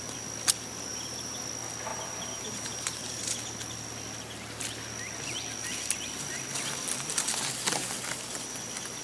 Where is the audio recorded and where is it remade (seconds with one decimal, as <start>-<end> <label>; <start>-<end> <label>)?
0.0-0.9 recorded; 0.9-1.4 remade; 1.4-1.9 recorded; 1.9-3.2 remade; 3.2-9.0 recorded